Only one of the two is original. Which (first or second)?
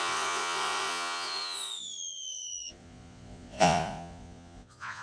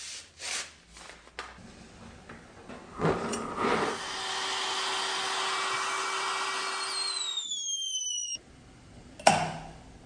second